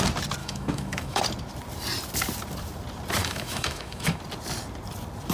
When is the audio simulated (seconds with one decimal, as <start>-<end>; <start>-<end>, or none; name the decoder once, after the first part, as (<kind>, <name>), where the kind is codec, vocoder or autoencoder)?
0.4-1.2 (autoencoder, DAC-VAE); 3.2-4.2